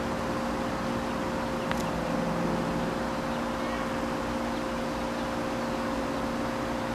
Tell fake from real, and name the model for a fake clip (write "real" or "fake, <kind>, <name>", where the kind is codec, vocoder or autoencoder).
real